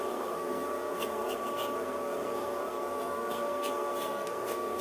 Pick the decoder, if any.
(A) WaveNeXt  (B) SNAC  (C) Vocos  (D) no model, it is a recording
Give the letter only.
B